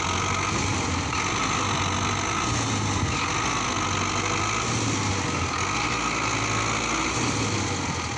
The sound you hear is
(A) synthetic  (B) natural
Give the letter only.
B